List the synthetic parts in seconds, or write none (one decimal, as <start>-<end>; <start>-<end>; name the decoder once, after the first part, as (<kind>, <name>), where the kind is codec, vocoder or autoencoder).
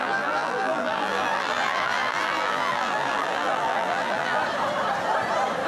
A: 0.0-4.4 (vocoder, BigVGAN v2)